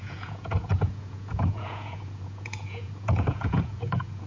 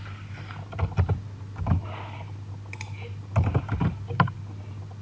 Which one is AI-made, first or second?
first